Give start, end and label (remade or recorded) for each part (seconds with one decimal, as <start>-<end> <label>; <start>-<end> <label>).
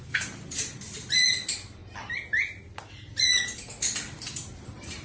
0.0-1.8 remade; 1.8-2.9 recorded; 2.9-5.0 remade